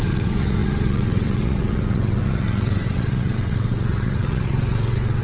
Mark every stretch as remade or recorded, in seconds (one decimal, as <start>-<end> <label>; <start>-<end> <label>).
0.0-5.2 remade